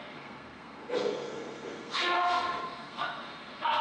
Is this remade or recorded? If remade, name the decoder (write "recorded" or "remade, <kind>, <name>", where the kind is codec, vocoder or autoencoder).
remade, codec, SNAC